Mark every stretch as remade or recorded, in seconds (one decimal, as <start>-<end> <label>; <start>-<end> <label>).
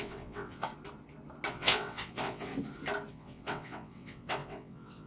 0.0-0.7 remade; 0.7-1.5 recorded; 1.5-2.5 remade; 2.5-3.1 recorded; 3.1-5.1 remade